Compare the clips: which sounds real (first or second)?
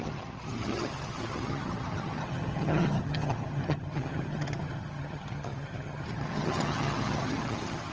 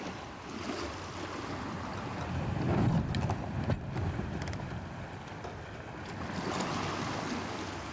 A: second